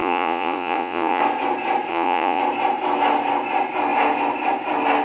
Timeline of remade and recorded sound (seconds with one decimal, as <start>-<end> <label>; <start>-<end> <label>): 0.0-1.2 remade; 1.2-1.9 recorded; 1.9-2.4 remade; 2.4-5.0 recorded